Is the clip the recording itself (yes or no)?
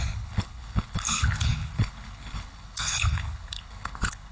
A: no